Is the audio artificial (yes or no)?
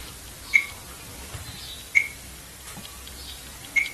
no